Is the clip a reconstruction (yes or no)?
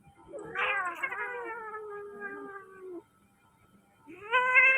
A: no